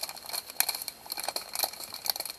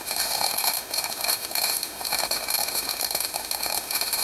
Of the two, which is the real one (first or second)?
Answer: first